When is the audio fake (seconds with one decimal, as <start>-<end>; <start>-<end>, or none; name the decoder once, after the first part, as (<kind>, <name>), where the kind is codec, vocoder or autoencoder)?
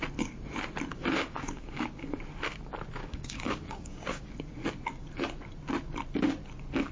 0.9-2.2 (codec, DAC); 3.0-4.3